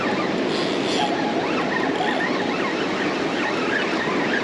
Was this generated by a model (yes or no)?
no